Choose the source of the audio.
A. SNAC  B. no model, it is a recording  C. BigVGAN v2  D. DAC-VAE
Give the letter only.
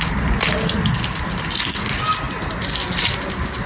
B